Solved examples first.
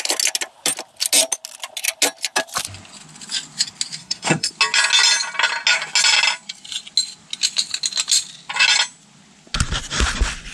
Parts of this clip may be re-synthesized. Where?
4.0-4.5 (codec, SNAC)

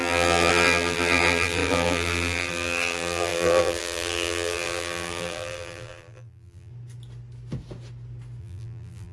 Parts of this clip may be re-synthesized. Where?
0.0-6.7 (vocoder, BigVGAN v2); 8.4-9.1